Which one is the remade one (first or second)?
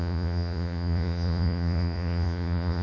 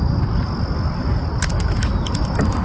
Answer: first